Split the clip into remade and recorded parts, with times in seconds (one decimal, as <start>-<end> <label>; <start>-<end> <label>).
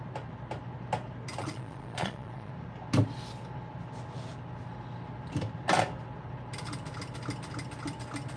0.0-1.4 recorded; 1.4-2.5 remade; 2.5-8.4 recorded